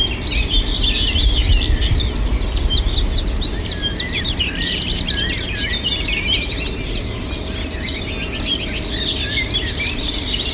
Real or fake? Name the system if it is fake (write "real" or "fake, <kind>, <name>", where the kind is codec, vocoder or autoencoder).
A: real